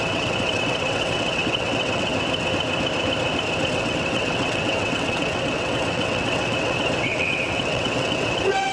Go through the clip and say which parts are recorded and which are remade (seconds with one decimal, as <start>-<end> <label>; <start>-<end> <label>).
0.0-2.1 remade; 2.1-3.7 recorded; 3.7-8.7 remade